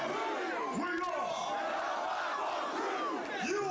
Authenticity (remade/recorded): recorded